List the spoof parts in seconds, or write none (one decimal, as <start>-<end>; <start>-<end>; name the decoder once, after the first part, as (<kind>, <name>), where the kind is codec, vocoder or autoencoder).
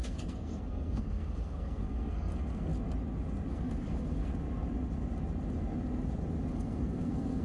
0.0-2.7 (codec, SNAC); 3.5-4.3; 6.5-7.4